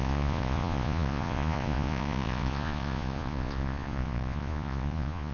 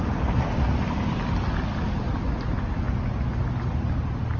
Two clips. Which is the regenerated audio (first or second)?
first